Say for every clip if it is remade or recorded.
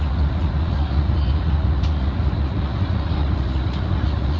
remade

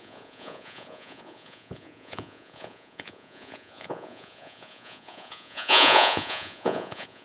remade